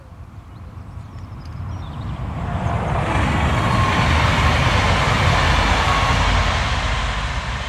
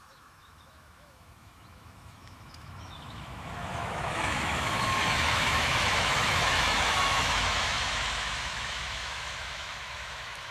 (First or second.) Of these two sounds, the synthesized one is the second